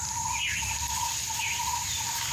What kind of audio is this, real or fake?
real